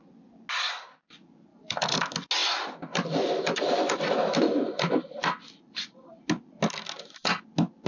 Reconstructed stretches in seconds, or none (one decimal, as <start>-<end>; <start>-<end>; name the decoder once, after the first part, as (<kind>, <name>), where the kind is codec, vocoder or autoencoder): 1.5-2.0 (vocoder, BigVGAN v2); 2.4-6.1